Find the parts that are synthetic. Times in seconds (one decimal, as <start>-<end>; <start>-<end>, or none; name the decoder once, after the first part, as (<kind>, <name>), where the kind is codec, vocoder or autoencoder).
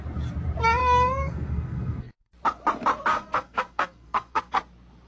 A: 0.8-2.3 (codec, SNAC); 3.1-4.6